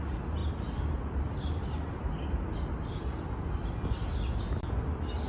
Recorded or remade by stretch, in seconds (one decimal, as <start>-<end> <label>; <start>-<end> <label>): 0.0-5.3 recorded